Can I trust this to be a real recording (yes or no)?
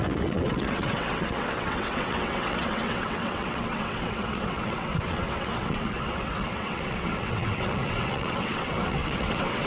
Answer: no